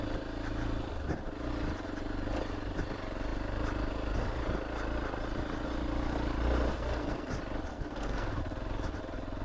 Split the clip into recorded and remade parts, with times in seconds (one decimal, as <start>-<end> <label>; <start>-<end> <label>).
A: 0.0-6.7 recorded; 6.7-7.3 remade; 7.3-7.7 recorded; 7.7-8.4 remade; 8.4-9.4 recorded

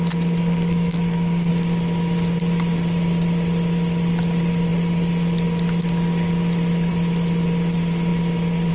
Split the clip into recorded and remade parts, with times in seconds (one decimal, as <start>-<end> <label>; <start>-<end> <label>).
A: 0.0-0.4 recorded; 0.4-1.5 remade; 1.5-8.7 recorded

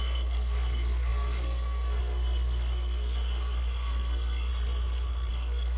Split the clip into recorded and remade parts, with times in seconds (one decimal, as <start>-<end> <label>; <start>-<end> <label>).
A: 0.0-4.5 remade; 4.5-5.3 recorded; 5.3-5.8 remade

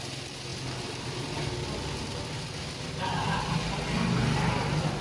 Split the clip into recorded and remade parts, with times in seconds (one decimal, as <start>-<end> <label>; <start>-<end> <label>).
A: 0.0-0.5 recorded; 0.5-3.5 remade; 3.5-5.0 recorded